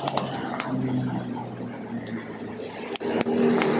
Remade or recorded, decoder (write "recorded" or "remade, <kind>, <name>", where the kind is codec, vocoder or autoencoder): recorded